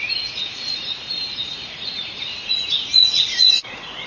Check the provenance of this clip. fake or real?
fake